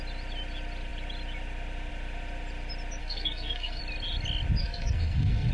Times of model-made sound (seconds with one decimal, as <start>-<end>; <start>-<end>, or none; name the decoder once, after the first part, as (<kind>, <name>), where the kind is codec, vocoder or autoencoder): 3.0-3.8 (codec, SNAC); 4.6-5.5